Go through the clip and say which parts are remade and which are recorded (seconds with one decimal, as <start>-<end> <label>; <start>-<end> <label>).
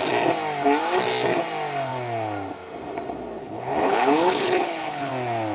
0.0-3.4 recorded; 3.4-5.1 remade; 5.1-5.5 recorded